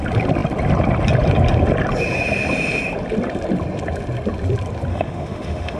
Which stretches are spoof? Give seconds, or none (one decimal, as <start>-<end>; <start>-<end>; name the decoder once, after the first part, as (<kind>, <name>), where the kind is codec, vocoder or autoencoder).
4.9-5.8 (autoencoder, DAC-VAE)